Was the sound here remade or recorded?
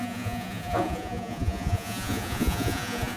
remade